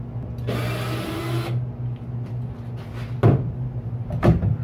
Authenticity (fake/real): real